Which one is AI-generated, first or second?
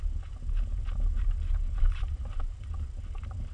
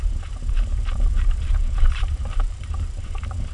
second